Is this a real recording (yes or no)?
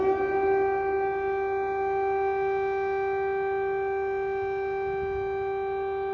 yes